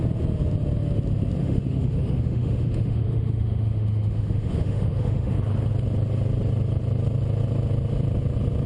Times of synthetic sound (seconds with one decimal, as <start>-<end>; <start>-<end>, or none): 1.4-5.3